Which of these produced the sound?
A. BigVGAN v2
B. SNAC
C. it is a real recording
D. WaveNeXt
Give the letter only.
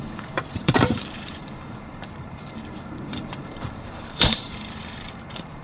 A